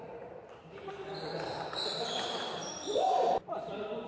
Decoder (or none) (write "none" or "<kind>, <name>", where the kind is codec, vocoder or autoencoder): vocoder, BigVGAN v2